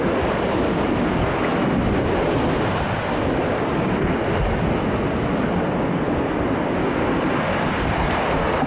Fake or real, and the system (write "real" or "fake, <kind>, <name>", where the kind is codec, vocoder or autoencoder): real